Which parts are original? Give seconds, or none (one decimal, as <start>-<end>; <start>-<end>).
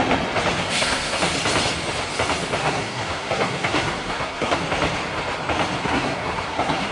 0.0-0.6; 1.2-2.6; 4.6-5.8